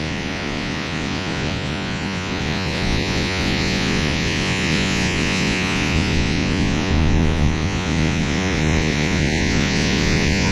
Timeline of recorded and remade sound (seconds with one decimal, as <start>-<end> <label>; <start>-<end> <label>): 0.0-10.5 remade